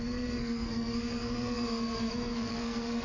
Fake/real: fake